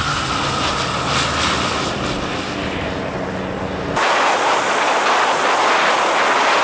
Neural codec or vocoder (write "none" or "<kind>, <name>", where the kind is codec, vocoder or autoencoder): none